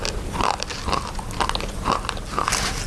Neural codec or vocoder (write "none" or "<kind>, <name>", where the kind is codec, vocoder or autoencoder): none